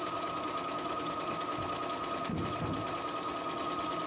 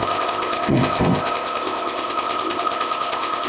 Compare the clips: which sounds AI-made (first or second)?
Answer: second